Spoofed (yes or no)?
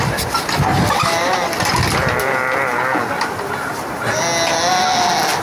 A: no